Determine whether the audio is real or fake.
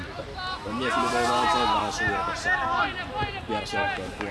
real